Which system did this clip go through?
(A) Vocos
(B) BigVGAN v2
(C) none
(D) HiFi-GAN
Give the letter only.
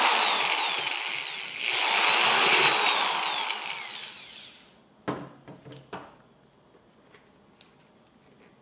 C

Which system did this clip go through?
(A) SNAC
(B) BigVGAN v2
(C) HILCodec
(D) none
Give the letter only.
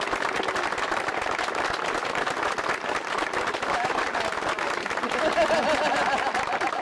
D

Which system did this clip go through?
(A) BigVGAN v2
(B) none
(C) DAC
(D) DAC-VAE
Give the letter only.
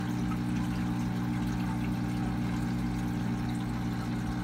B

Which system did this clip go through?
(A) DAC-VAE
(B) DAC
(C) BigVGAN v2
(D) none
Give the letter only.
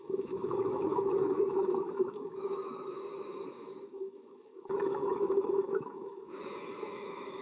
A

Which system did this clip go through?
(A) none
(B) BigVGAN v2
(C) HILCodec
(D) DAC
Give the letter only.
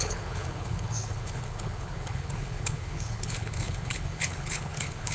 C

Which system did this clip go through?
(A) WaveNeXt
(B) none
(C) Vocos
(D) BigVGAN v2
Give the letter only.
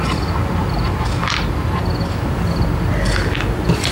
B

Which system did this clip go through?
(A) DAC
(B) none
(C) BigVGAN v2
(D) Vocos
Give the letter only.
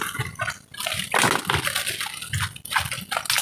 B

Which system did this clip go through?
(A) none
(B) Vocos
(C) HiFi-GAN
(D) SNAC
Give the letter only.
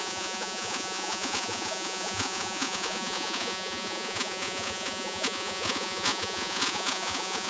B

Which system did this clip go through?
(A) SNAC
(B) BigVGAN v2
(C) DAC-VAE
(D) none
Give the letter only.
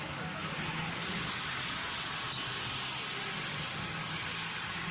D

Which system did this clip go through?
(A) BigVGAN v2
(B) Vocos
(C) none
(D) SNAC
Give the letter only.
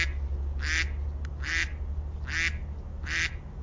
C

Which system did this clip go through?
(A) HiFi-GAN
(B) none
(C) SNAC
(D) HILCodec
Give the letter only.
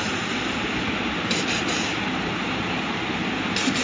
B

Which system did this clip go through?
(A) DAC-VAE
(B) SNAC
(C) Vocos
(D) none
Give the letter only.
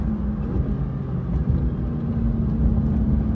D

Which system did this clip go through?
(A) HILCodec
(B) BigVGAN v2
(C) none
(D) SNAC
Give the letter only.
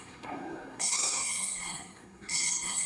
D